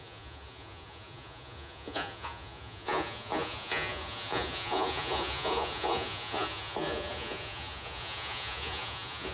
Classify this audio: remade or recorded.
remade